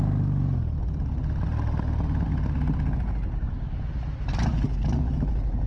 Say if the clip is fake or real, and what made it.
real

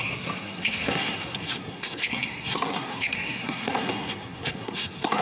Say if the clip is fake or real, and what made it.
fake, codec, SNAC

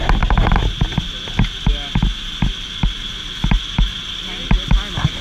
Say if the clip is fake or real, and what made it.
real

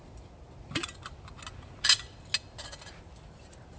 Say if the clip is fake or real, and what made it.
real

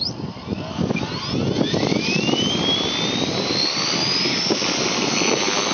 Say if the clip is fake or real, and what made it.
fake, vocoder, BigVGAN v2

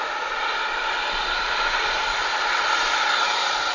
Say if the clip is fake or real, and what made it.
real